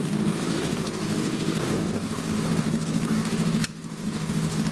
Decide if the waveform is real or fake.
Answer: fake